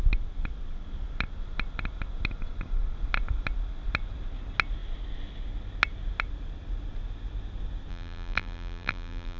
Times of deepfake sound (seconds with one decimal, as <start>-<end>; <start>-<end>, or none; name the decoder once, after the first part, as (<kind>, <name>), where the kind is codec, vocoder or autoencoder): 7.9-9.4 (vocoder, BigVGAN v2)